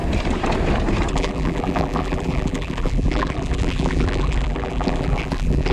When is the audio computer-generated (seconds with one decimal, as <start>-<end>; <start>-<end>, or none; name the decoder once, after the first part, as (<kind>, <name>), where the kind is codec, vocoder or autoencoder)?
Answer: 1.1-5.7 (vocoder, BigVGAN v2)